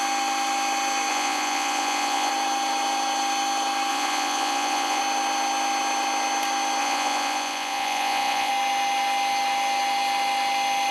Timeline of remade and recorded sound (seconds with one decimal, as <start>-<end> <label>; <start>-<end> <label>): 0.0-1.1 recorded; 1.1-2.3 remade; 2.3-3.9 recorded; 3.9-5.0 remade; 5.0-6.8 recorded; 6.8-8.5 remade; 8.5-10.9 recorded